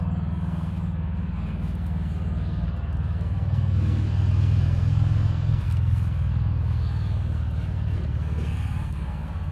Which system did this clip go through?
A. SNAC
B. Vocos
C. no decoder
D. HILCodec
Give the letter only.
A